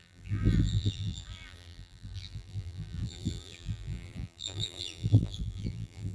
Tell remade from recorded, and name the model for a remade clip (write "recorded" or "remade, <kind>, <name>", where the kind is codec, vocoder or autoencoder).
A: remade, vocoder, BigVGAN v2